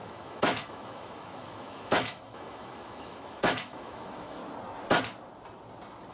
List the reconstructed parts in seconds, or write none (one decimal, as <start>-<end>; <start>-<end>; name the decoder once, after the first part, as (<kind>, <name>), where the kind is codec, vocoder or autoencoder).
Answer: 0.0-4.4 (autoencoder, DAC-VAE)